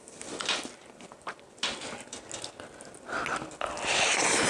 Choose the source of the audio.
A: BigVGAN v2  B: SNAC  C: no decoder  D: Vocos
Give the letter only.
C